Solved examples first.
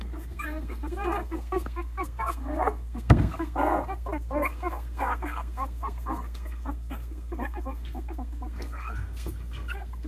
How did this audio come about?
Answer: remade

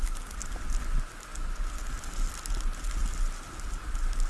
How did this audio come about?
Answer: recorded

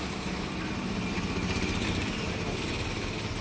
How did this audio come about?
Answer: recorded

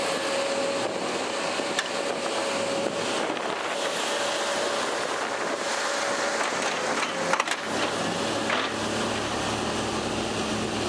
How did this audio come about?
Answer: recorded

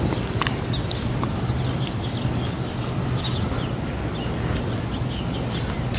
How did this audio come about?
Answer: recorded